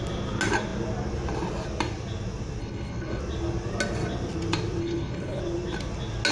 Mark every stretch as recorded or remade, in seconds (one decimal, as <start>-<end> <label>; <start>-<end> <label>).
0.0-2.6 recorded; 2.6-3.2 remade; 3.2-4.8 recorded; 4.8-5.4 remade; 5.4-6.3 recorded